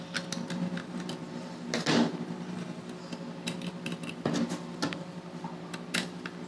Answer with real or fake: real